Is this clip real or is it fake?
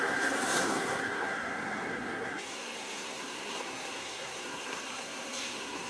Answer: fake